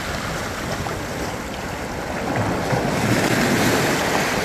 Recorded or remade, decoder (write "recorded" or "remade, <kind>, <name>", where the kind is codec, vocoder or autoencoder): recorded